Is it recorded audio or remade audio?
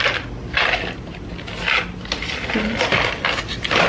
recorded